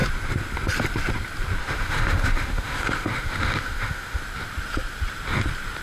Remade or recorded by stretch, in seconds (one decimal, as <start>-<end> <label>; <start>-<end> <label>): 0.0-1.6 recorded; 1.6-4.2 remade; 4.2-5.8 recorded